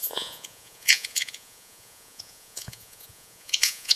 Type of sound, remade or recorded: remade